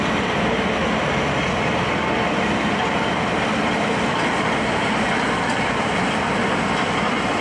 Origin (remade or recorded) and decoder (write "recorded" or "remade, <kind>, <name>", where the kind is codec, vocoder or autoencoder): recorded